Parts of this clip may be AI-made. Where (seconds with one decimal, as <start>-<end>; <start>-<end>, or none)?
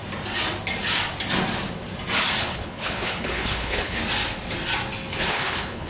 2.4-4.0; 5.2-5.9